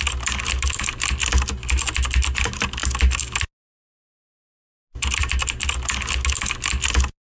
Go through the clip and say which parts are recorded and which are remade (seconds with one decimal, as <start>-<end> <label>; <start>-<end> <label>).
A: 0.0-7.3 recorded